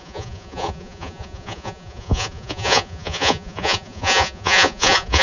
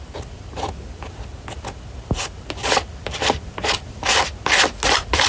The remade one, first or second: first